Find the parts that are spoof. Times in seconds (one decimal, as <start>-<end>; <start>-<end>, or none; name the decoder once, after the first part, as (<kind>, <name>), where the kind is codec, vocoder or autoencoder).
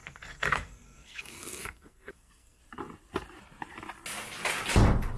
0.0-2.6 (codec, SNAC)